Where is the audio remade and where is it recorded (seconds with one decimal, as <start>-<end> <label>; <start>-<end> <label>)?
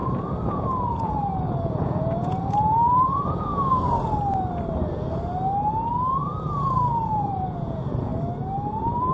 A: 0.0-0.5 recorded; 0.5-3.5 remade; 3.5-6.2 recorded; 6.2-8.1 remade; 8.1-8.7 recorded; 8.7-9.1 remade